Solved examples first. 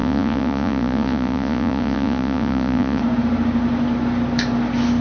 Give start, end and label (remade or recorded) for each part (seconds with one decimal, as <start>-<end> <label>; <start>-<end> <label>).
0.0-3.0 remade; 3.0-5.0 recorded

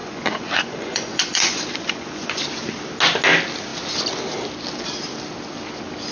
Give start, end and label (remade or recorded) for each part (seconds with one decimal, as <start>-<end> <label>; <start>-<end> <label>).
0.0-2.4 remade; 2.4-6.1 recorded

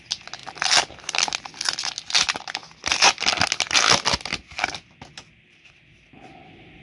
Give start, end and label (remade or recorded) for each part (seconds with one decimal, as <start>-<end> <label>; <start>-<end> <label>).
0.0-6.8 recorded

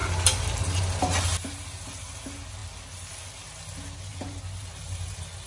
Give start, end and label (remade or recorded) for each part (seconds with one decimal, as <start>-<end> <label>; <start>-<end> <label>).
0.0-5.5 recorded

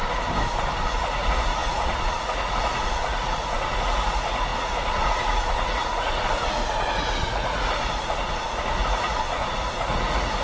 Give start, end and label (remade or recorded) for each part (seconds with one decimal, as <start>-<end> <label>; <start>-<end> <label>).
0.0-1.0 recorded; 1.0-10.4 remade

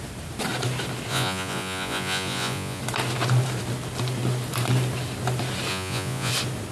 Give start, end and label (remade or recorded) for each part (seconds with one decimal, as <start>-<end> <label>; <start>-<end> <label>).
0.0-1.1 recorded; 1.1-2.8 remade; 2.8-5.7 recorded; 5.7-6.3 remade; 6.3-6.7 recorded

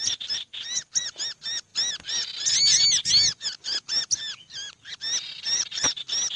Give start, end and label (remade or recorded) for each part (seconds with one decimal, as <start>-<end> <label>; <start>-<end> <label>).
0.0-6.4 recorded